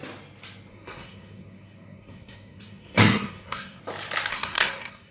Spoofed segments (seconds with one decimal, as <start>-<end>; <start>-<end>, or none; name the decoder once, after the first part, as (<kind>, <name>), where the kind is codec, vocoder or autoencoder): 0.7-3.8 (codec, SNAC); 4.3-5.1